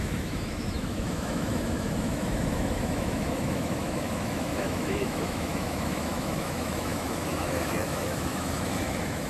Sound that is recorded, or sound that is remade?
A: remade